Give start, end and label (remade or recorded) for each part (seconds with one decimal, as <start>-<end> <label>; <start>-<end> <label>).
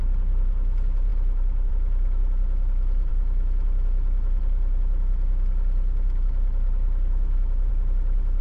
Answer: 0.0-8.4 recorded